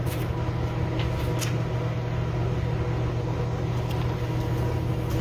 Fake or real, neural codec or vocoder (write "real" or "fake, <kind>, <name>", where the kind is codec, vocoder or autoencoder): real